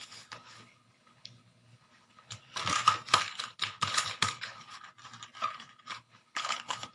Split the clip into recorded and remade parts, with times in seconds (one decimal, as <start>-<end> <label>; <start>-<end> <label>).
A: 0.0-2.6 remade; 2.6-3.2 recorded; 3.2-4.9 remade; 4.9-5.5 recorded; 5.5-6.9 remade